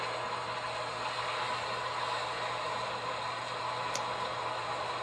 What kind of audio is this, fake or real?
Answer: real